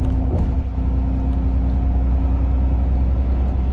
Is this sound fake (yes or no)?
no